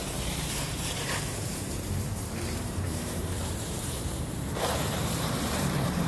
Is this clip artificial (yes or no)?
yes